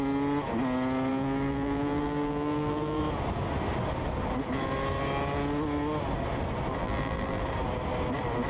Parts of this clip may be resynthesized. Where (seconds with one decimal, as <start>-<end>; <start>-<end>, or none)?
1.1-3.0; 6.8-7.4